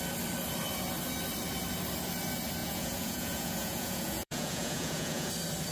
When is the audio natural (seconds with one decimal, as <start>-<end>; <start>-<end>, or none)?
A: 0.0-2.6; 5.3-5.7